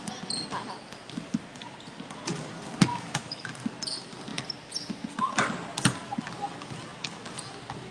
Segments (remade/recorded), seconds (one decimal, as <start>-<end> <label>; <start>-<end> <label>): 0.0-2.9 recorded; 2.9-3.5 remade; 3.5-7.9 recorded